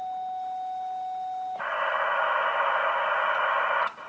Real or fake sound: real